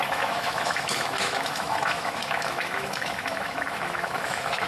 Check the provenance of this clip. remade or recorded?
remade